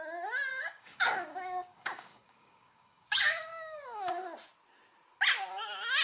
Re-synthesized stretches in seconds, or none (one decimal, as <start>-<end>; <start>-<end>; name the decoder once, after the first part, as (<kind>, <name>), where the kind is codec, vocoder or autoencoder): 0.5-4.1 (codec, DAC)